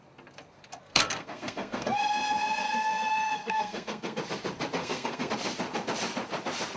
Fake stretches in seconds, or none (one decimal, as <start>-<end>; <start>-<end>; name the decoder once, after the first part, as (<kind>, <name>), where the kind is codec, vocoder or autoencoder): 0.8-4.2 (codec, SNAC); 4.8-5.3